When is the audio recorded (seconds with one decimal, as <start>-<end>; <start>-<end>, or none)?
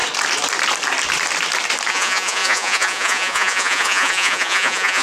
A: 0.0-1.9